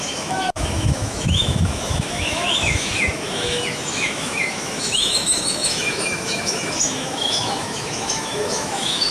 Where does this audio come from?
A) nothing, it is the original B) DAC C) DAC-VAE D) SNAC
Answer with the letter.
C